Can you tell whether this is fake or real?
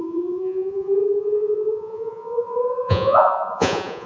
fake